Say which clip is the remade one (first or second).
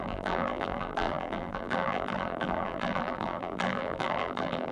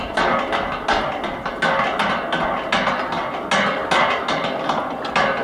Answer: first